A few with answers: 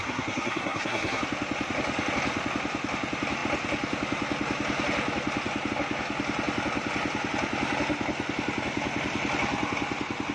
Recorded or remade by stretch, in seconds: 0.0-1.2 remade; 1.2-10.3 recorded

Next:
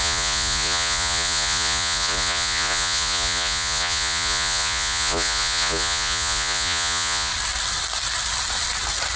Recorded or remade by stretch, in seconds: 0.0-7.3 remade; 7.3-9.2 recorded

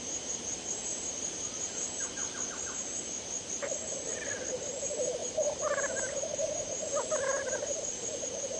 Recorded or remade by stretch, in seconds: 0.0-2.2 remade; 2.2-4.5 recorded; 4.5-8.6 remade